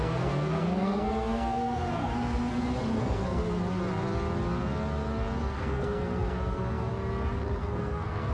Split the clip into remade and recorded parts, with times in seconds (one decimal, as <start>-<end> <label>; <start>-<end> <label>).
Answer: 0.0-2.5 remade; 2.5-3.0 recorded; 3.0-3.4 remade; 3.4-5.4 recorded; 5.4-6.9 remade; 6.9-7.6 recorded; 7.6-8.3 remade